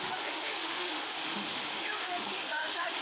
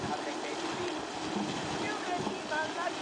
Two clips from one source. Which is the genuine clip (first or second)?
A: second